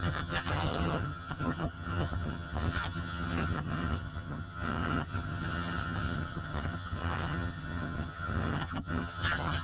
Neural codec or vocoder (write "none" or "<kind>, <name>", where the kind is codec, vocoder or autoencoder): vocoder, HiFi-GAN